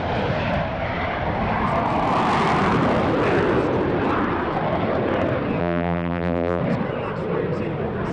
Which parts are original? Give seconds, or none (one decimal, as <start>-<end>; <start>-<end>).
0.0-5.6; 6.6-8.1